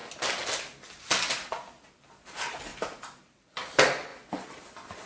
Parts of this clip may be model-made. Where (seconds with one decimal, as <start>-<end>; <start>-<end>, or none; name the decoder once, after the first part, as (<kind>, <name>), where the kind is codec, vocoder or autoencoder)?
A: 1.5-4.1 (vocoder, BigVGAN v2)